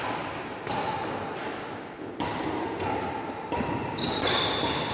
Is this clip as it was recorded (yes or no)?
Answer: yes